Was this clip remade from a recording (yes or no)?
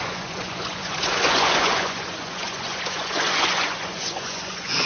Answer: yes